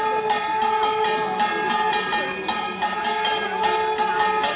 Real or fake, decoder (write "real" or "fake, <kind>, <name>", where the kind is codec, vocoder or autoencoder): real